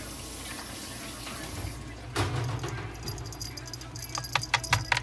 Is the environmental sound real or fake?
real